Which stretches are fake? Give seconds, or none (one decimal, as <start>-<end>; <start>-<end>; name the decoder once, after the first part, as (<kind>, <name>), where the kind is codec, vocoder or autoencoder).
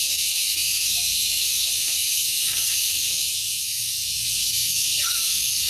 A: 0.0-5.7 (codec, SNAC)